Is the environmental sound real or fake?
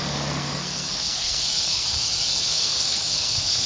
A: fake